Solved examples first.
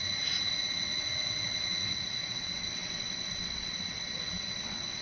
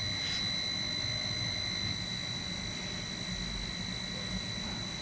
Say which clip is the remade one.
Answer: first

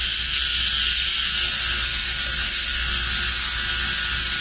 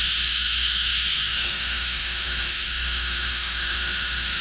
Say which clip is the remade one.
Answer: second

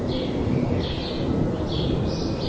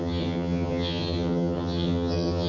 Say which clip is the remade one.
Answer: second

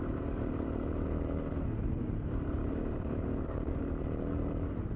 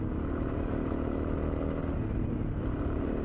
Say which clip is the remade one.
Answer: first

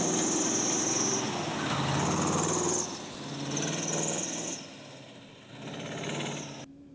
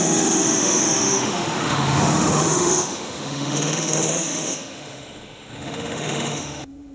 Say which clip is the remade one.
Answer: second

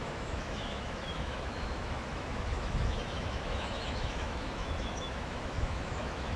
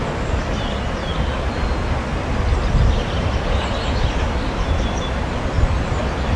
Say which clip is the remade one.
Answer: first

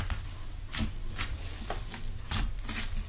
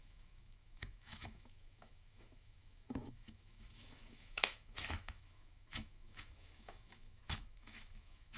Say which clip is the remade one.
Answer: second